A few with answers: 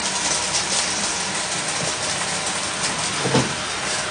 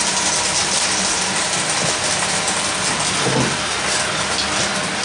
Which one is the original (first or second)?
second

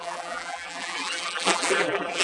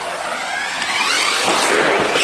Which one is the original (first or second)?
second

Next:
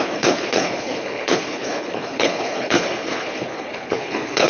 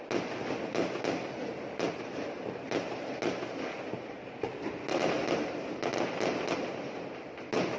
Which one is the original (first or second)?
second